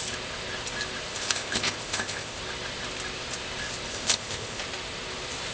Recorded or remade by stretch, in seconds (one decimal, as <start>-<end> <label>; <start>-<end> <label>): 0.0-1.1 recorded; 1.1-2.4 remade; 2.4-3.9 recorded; 3.9-4.6 remade; 4.6-5.5 recorded